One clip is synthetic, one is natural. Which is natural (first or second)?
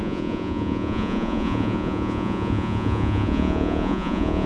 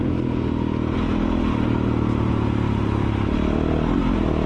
second